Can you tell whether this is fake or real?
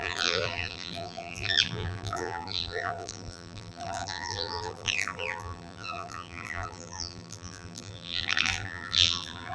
fake